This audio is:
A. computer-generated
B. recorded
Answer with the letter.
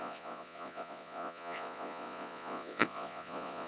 A